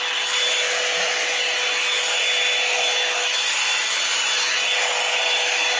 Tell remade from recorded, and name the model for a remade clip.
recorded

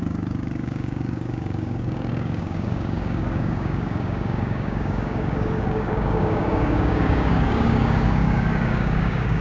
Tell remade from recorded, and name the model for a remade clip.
remade, codec, DAC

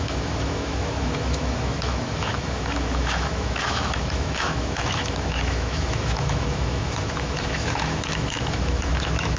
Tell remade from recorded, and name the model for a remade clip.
remade, autoencoder, DAC-VAE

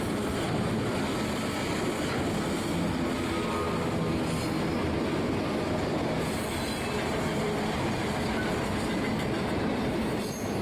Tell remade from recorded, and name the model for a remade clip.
recorded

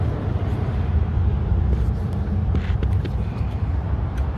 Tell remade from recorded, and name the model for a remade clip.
remade, vocoder, BigVGAN v2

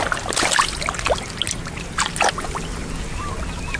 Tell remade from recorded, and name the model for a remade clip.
recorded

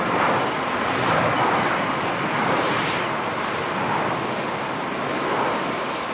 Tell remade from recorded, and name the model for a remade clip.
recorded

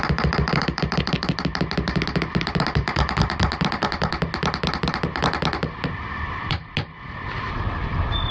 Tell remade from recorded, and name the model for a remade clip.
recorded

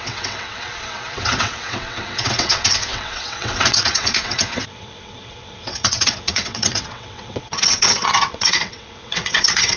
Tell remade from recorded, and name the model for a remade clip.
remade, vocoder, WaveNeXt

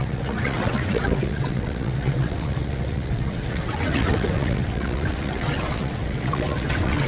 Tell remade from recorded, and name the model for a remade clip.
remade, vocoder, WaveNeXt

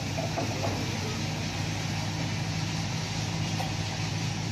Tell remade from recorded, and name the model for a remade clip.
recorded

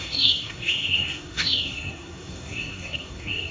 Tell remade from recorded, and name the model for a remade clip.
remade, codec, SNAC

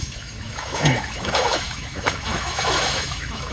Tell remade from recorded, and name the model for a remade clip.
remade, autoencoder, DAC-VAE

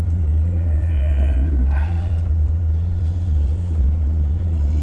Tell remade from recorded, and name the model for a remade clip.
remade, vocoder, Vocos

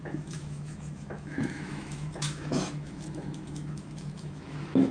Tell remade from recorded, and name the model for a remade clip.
remade, autoencoder, DAC-VAE